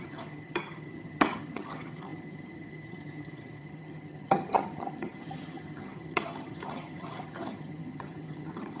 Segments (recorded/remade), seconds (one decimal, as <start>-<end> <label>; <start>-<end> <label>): 0.0-8.8 remade